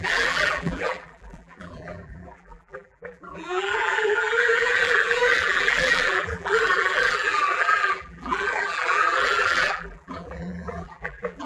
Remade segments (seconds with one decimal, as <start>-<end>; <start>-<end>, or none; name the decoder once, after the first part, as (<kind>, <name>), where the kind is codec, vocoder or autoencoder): 0.0-11.5 (vocoder, BigVGAN v2)